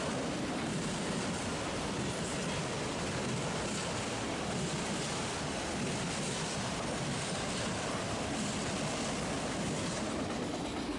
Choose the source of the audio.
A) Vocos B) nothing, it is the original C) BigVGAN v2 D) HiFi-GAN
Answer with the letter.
C